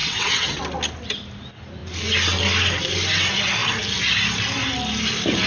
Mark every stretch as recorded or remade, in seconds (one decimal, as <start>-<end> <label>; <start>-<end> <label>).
0.0-0.6 remade; 0.6-5.5 recorded

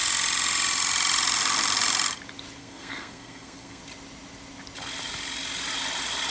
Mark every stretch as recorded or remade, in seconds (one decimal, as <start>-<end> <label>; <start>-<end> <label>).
0.0-2.6 recorded; 2.6-3.8 remade; 3.8-6.3 recorded

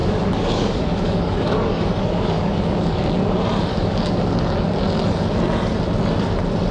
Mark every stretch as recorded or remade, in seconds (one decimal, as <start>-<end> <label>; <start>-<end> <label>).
0.0-3.1 remade; 3.1-3.7 recorded; 3.7-4.2 remade; 4.2-6.7 recorded

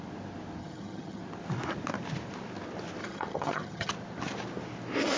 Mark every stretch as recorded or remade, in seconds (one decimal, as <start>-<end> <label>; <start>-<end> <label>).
0.0-0.6 recorded; 0.6-1.2 remade; 1.2-3.0 recorded; 3.0-3.9 remade; 3.9-5.2 recorded

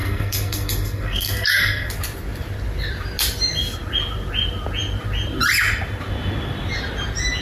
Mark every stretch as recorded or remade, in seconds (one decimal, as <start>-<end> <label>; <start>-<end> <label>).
0.0-1.9 remade; 1.9-7.4 recorded